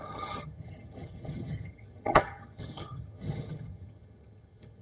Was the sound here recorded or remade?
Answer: remade